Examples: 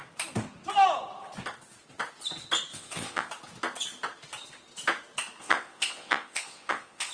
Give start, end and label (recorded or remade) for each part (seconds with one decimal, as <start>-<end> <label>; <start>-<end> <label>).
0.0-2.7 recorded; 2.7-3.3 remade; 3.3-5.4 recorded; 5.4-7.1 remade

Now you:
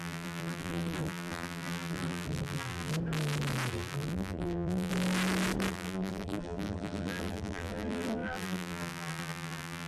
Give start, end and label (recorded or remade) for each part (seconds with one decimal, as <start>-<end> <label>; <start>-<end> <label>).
0.0-2.9 remade; 2.9-3.7 recorded; 3.7-4.9 remade; 4.9-5.7 recorded; 5.7-9.9 remade

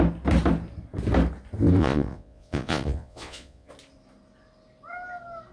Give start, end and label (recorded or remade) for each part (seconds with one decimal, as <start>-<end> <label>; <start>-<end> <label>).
0.0-1.8 recorded; 1.8-3.7 remade; 3.7-5.5 recorded